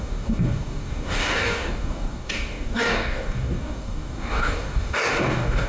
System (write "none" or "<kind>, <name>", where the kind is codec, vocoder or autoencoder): codec, DAC